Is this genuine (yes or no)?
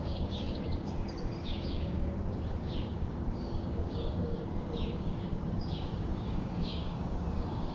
no